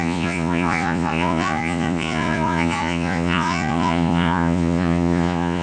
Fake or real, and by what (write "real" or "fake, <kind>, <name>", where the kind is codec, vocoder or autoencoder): fake, vocoder, Vocos